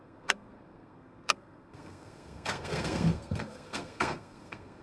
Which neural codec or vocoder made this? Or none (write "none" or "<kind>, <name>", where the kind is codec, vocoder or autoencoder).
codec, SNAC